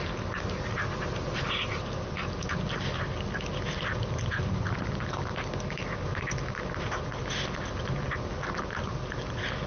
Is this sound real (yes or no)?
yes